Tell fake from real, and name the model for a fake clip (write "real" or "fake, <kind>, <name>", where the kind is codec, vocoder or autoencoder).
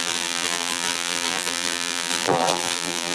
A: fake, vocoder, BigVGAN v2